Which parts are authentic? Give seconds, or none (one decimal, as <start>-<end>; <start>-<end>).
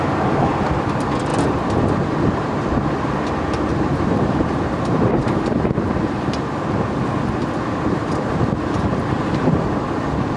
0.0-3.7; 6.4-8.0; 8.6-10.4